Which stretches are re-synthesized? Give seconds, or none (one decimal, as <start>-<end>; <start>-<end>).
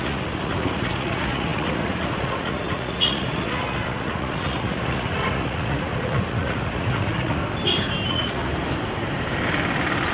0.0-7.4; 8.1-8.5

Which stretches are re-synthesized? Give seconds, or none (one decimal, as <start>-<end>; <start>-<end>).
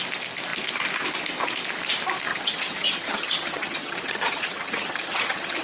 2.3-5.6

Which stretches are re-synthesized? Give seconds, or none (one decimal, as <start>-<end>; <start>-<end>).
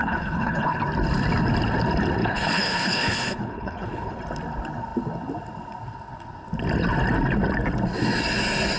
0.0-0.8; 2.2-4.2